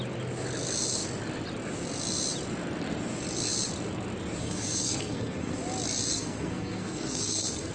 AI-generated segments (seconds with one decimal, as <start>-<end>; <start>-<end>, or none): 4.4-5.6; 6.1-7.7